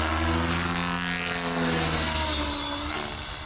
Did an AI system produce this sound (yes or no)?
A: no